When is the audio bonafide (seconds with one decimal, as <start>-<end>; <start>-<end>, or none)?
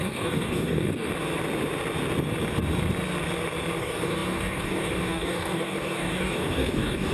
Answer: 1.1-3.8